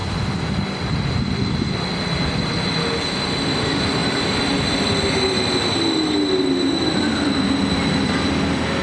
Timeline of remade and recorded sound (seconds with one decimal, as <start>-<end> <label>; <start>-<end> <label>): 0.0-8.8 recorded